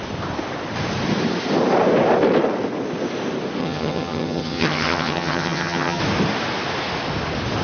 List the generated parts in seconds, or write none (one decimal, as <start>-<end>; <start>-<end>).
3.6-6.0